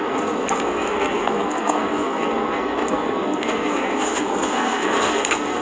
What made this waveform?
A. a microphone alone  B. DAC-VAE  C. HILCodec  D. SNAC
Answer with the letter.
D